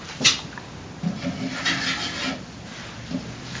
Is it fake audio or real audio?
real